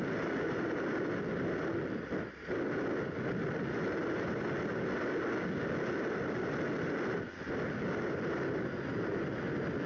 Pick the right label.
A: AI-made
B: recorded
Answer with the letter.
B